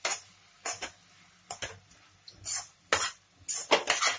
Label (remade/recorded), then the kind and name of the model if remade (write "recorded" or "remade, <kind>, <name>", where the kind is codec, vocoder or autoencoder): recorded